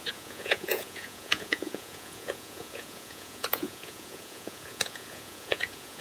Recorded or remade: remade